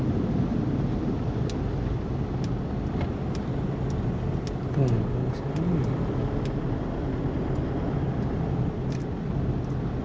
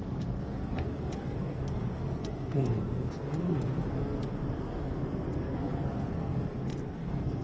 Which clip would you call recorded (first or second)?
first